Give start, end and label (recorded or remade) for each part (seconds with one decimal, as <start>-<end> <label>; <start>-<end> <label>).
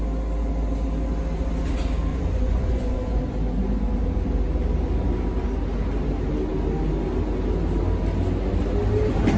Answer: 0.0-2.1 recorded; 2.1-3.2 remade; 3.2-9.4 recorded